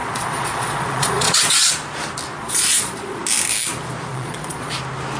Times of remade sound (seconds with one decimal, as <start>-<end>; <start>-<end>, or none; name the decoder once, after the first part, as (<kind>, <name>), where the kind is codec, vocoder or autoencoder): 0.0-1.7 (vocoder, Vocos); 2.3-3.2; 4.1-4.7